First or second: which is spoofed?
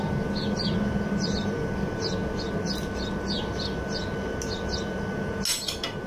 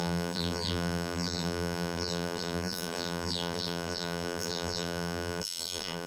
second